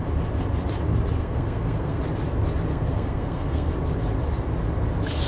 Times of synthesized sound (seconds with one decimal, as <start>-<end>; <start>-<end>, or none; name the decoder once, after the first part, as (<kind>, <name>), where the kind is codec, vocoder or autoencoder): 1.2-2.0 (codec, SNAC); 2.7-3.7